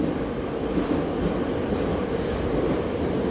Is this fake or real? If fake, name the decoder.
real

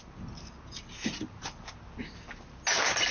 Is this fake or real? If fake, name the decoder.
real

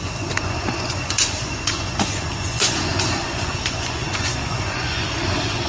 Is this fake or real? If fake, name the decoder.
fake, vocoder, Vocos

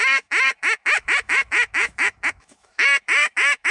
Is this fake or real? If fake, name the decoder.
fake, autoencoder, DAC-VAE